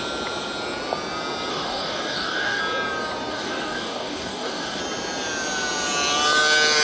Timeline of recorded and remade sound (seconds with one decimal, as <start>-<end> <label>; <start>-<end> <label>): 0.0-1.5 recorded; 1.5-2.6 remade; 2.6-3.3 recorded; 3.3-4.8 remade; 4.8-6.8 recorded

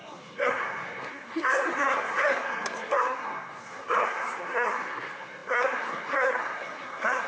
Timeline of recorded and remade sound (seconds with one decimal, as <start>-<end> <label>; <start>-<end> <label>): 0.0-7.3 remade

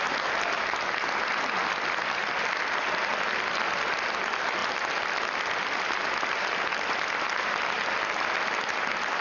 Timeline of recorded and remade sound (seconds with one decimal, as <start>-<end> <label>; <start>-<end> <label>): 0.0-9.2 recorded

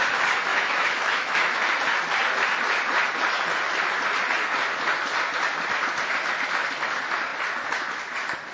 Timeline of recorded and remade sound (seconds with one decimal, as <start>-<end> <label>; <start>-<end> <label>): 0.0-0.5 recorded; 0.5-1.7 remade; 1.7-8.5 recorded

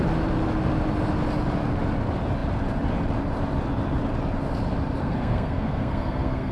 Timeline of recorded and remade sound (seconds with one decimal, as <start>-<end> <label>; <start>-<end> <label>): 0.0-5.0 recorded; 5.0-6.5 remade

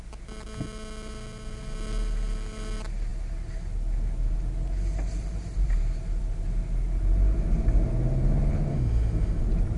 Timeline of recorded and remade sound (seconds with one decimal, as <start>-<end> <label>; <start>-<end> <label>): 0.0-8.7 recorded; 8.7-9.4 remade; 9.4-9.8 recorded